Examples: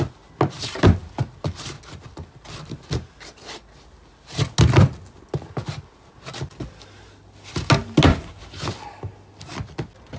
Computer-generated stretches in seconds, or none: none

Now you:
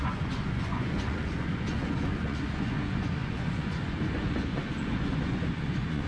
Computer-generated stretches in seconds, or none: 0.0-6.1 (vocoder, Vocos)

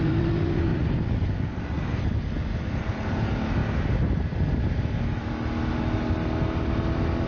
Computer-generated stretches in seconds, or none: none